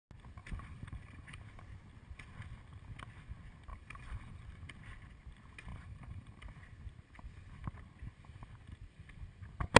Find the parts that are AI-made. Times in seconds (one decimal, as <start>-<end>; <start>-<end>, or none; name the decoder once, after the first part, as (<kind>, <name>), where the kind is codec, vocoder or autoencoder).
0.4-1.4 (vocoder, BigVGAN v2); 3.7-4.4; 5.7-6.4